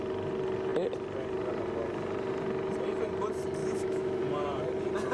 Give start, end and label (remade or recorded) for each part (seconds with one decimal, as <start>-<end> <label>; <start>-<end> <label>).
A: 0.0-3.6 recorded; 3.6-4.2 remade; 4.2-5.1 recorded